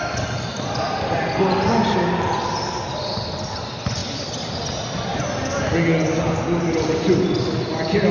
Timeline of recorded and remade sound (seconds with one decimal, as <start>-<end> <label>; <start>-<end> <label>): 0.0-8.1 recorded

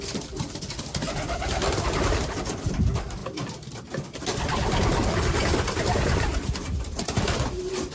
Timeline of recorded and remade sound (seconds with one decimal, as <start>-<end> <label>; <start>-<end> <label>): 0.0-7.9 remade

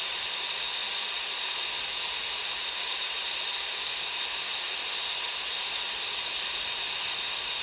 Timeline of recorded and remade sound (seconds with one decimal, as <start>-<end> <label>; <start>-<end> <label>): 0.0-7.6 recorded

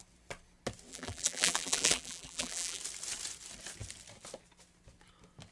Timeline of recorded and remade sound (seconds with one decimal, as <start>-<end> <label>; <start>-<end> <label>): 0.0-0.9 recorded; 0.9-2.8 remade; 2.8-5.5 recorded

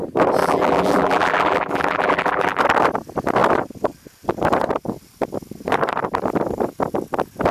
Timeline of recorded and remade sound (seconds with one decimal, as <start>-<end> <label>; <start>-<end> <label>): 0.0-0.4 recorded; 0.4-2.6 remade; 2.6-7.5 recorded

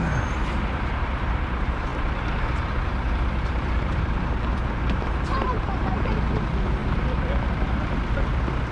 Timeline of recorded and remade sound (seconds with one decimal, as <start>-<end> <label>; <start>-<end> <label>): 0.0-6.8 remade; 6.8-7.5 recorded; 7.5-8.7 remade